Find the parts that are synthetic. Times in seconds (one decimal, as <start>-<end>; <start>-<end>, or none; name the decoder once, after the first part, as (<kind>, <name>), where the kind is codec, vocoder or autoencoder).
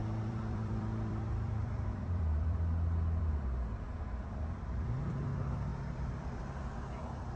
0.0-3.2 (vocoder, BigVGAN v2); 5.7-6.4